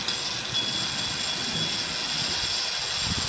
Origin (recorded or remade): recorded